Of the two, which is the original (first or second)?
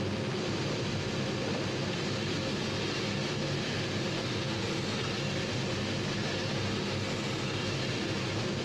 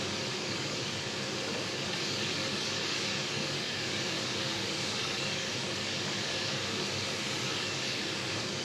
first